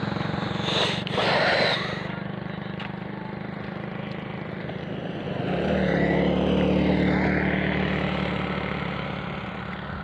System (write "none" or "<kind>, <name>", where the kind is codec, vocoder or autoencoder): none